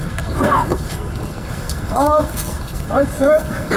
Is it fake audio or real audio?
fake